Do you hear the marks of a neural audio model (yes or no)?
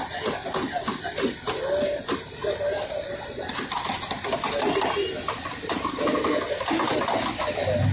no